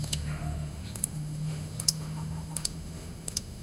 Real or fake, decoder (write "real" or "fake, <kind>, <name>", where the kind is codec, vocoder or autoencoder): fake, autoencoder, DAC-VAE